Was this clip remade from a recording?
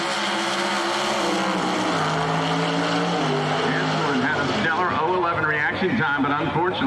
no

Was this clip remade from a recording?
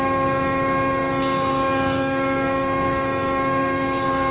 yes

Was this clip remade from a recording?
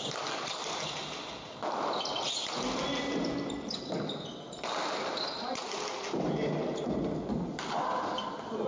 no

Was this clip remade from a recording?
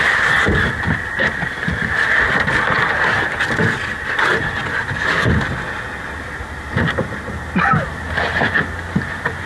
no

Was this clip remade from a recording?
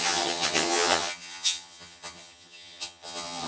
yes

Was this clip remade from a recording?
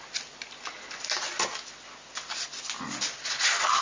no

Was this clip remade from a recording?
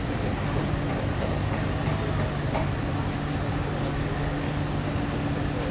no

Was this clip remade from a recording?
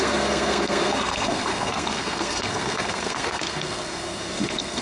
yes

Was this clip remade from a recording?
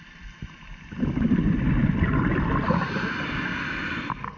no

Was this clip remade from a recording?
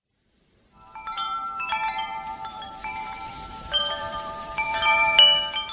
yes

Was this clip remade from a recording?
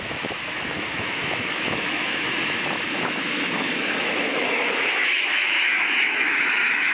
yes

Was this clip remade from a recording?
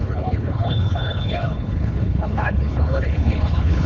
yes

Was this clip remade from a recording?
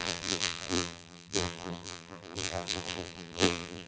yes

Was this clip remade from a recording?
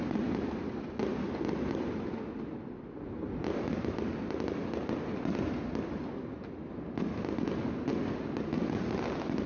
no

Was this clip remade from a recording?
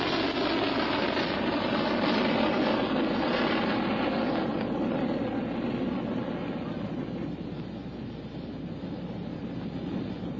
no